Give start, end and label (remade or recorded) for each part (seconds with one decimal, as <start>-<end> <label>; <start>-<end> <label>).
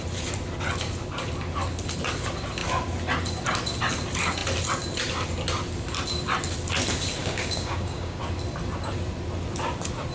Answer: 0.0-7.2 recorded; 7.2-8.2 remade; 8.2-10.1 recorded